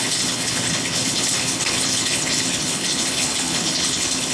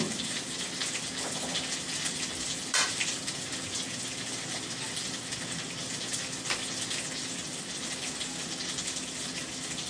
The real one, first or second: second